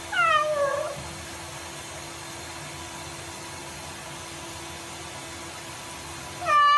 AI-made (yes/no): no